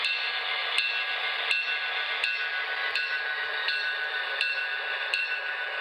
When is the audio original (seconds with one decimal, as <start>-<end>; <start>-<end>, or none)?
0.6-2.4